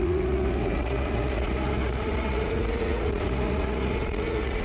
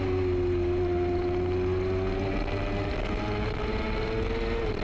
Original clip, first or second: second